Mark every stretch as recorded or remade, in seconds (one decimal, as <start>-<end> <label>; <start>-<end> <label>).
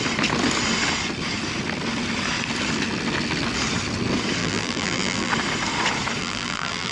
0.0-4.4 recorded; 4.4-5.3 remade; 5.3-6.2 recorded; 6.2-6.9 remade